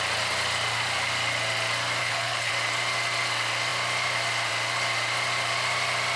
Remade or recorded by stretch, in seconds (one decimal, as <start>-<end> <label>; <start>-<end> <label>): 0.0-2.0 recorded; 2.0-2.5 remade; 2.5-6.2 recorded